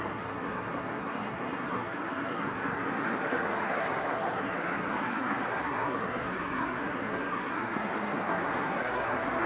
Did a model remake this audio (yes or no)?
yes